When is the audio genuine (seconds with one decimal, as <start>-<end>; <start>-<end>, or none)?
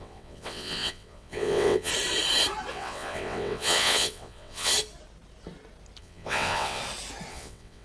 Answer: 1.9-2.7; 4.7-6.0; 6.8-7.3